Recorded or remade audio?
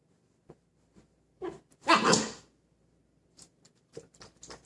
recorded